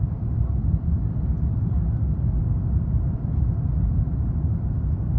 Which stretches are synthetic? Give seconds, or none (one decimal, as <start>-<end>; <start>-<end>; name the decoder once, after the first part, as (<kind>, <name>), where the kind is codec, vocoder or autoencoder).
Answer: 2.4-5.2 (vocoder, BigVGAN v2)